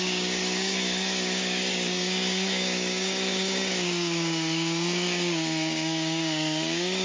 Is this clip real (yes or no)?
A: no